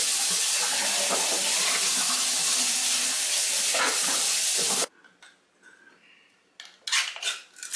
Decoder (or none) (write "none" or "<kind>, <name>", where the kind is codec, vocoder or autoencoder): none